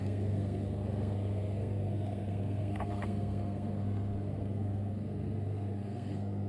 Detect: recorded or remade remade